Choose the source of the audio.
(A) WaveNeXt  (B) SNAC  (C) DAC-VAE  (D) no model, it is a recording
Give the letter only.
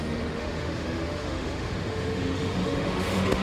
C